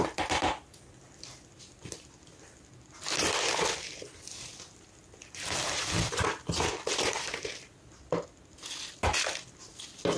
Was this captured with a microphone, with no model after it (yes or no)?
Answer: yes